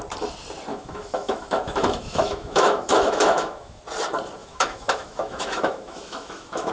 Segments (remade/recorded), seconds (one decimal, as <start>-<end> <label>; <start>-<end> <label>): 0.0-0.7 recorded; 0.7-3.8 remade; 3.8-4.4 recorded; 4.4-6.7 remade